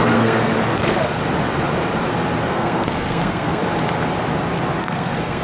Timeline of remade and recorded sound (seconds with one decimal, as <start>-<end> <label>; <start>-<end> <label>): 0.0-0.5 remade; 0.5-2.4 recorded; 2.4-3.6 remade; 3.6-4.8 recorded; 4.8-5.4 remade